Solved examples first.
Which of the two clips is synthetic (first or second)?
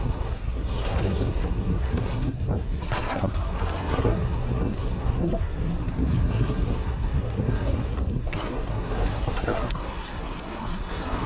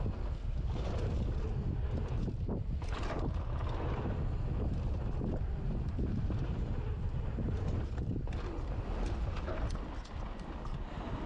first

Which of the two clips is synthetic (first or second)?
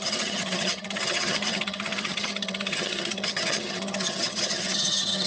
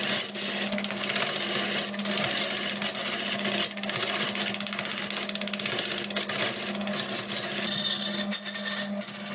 first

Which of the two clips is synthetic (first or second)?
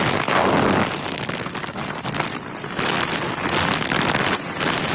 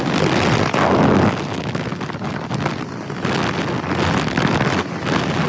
first